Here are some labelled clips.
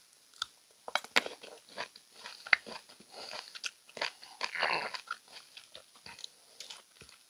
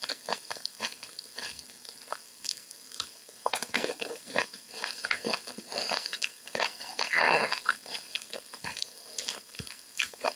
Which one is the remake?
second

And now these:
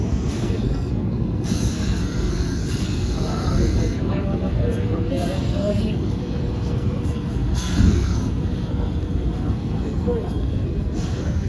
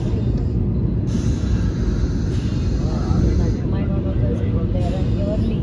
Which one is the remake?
first